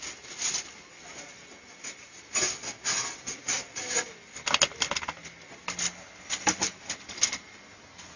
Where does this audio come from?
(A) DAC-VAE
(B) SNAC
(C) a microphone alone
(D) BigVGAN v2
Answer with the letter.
C